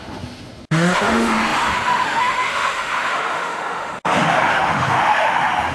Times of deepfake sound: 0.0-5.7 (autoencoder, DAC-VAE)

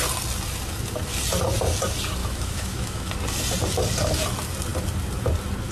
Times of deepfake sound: 2.2-3.1 (autoencoder, DAC-VAE)

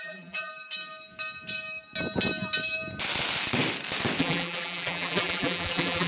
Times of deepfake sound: 0.0-0.5 (vocoder, BigVGAN v2); 4.2-6.1

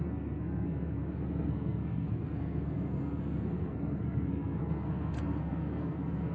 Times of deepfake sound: 0.0-6.3 (codec, SNAC)

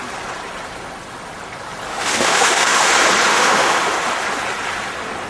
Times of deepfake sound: 1.9-2.9 (autoencoder, DAC-VAE); 3.3-3.9